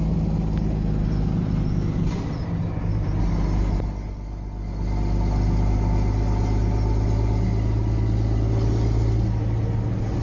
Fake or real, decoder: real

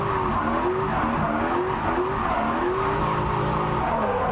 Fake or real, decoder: real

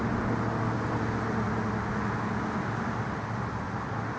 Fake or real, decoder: real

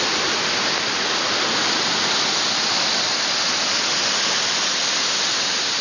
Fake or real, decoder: real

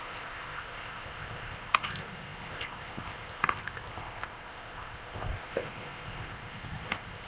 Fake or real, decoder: fake, codec, ZipCodec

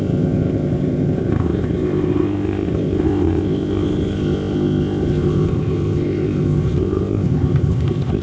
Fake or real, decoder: fake, codec, ZipCodec